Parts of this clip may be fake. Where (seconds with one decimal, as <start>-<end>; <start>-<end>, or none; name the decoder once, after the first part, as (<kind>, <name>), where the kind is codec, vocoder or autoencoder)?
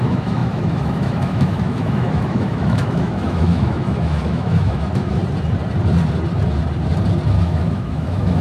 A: 0.0-5.2 (autoencoder, DAC-VAE); 7.4-8.4